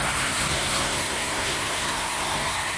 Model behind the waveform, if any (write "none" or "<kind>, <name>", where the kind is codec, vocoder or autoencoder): codec, SNAC